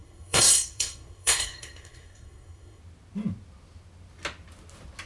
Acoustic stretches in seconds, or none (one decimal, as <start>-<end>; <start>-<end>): 2.8-5.1